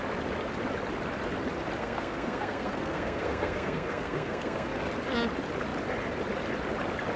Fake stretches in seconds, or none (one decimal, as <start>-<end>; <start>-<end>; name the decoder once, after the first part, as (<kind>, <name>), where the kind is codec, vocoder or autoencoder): 1.8-4.9 (codec, SNAC)